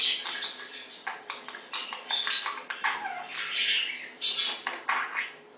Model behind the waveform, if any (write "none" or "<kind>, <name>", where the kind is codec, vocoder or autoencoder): none